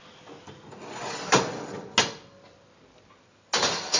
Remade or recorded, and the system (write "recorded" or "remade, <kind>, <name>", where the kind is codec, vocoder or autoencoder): recorded